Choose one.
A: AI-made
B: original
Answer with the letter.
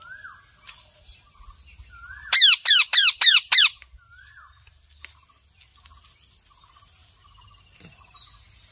B